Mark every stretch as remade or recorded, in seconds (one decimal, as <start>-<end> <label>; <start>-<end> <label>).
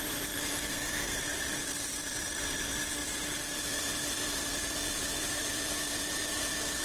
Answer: 0.0-0.6 recorded; 0.6-1.2 remade; 1.2-6.8 recorded